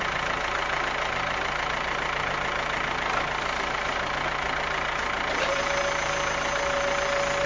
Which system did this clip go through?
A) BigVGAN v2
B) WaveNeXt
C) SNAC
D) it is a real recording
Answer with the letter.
D